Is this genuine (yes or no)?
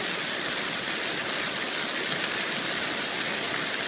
no